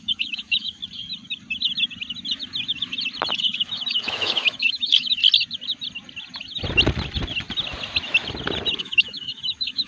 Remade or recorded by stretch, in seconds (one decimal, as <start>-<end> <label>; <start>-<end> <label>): 0.0-0.8 remade; 0.8-3.3 recorded; 3.3-5.2 remade; 5.2-8.8 recorded; 8.8-9.9 remade